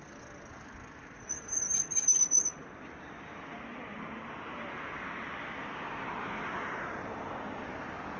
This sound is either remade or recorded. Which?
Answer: recorded